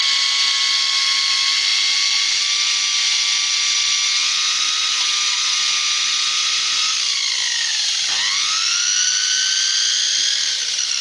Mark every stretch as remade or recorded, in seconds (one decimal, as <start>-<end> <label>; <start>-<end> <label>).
0.0-11.0 recorded